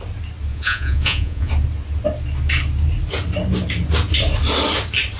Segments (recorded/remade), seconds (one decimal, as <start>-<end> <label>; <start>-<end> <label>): 0.0-0.5 recorded; 0.5-1.5 remade; 1.5-5.2 recorded